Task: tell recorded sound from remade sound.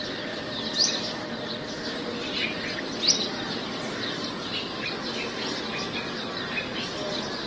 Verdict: recorded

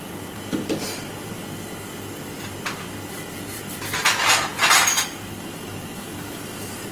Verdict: recorded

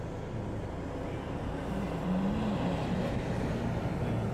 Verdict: recorded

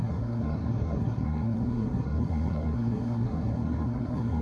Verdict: remade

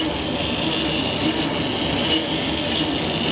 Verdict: recorded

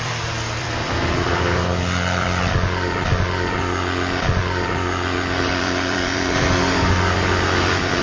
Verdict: remade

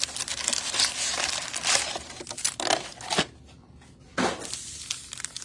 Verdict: recorded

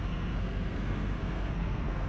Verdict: remade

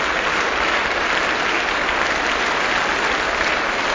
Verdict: recorded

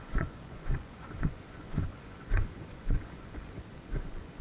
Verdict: remade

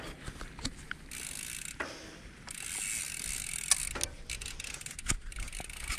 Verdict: recorded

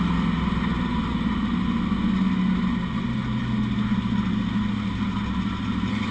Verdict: recorded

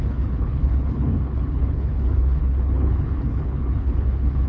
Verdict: remade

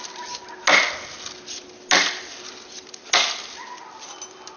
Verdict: recorded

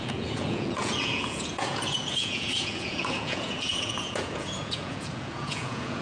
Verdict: remade